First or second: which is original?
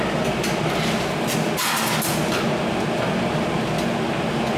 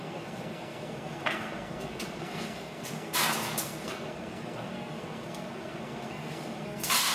first